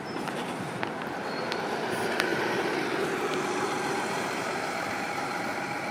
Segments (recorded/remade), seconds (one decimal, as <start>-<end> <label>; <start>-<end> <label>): 0.0-5.9 remade